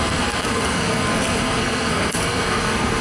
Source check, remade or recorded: remade